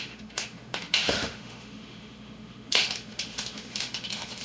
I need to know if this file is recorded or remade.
remade